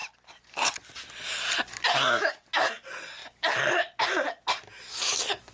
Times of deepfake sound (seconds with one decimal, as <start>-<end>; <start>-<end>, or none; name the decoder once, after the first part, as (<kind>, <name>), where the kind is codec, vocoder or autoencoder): none